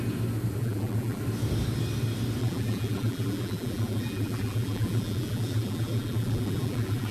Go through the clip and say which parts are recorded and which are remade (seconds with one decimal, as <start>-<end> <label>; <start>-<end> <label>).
0.0-0.6 recorded; 0.6-1.2 remade; 1.2-2.4 recorded; 2.4-7.1 remade